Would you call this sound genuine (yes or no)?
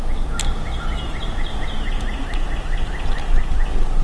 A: yes